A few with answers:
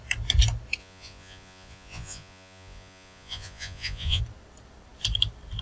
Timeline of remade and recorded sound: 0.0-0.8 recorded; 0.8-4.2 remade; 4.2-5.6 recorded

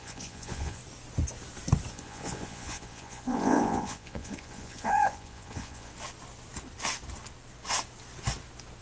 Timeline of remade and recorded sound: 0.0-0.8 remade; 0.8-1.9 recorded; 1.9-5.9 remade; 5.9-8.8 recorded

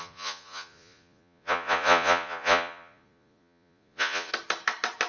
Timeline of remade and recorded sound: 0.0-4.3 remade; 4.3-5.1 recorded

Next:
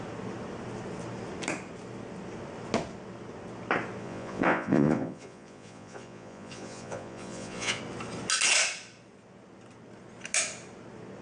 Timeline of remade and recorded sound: 0.0-4.0 recorded; 4.0-7.8 remade; 7.8-11.2 recorded